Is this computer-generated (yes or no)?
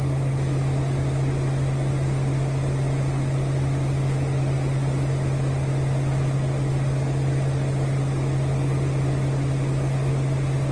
no